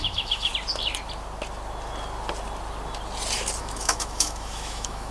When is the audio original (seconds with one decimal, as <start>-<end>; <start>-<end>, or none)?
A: 0.5-3.6